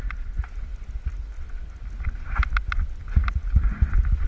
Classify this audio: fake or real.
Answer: real